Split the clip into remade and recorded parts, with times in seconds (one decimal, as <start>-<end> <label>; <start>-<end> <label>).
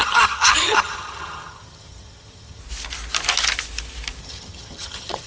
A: 0.0-2.6 remade; 2.6-4.2 recorded; 4.2-5.3 remade